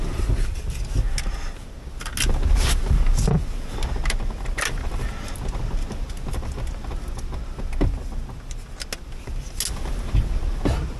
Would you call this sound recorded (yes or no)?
yes